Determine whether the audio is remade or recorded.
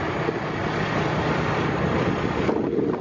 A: recorded